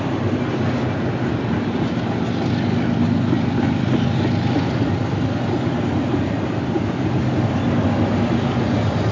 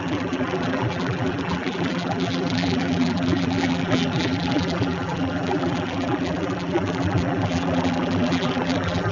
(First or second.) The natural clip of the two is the first